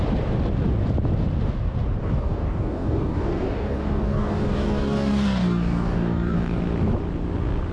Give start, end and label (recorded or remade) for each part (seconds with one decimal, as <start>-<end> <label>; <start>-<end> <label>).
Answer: 0.0-2.0 recorded; 2.0-6.6 remade; 6.6-7.7 recorded